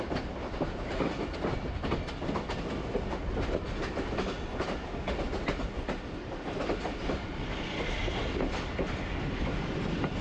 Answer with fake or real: real